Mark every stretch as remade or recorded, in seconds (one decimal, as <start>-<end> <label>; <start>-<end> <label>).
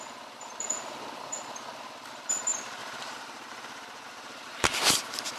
0.0-2.8 recorded; 2.8-4.9 remade; 4.9-5.4 recorded